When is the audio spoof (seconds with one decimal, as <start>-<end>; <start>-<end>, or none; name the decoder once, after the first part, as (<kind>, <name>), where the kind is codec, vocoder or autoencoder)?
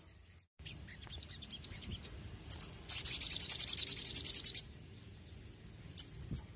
4.6-5.3 (vocoder, BigVGAN v2)